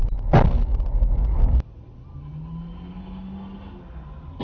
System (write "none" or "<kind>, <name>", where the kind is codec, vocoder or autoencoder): none